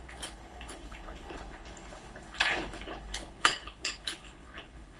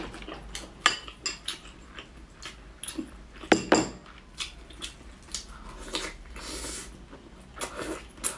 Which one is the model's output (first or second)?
first